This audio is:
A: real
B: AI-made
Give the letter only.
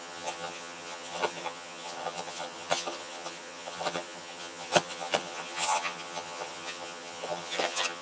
B